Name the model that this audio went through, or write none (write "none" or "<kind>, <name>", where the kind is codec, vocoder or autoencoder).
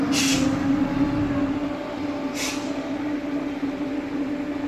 none